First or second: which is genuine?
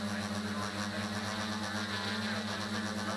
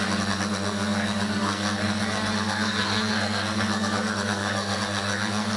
first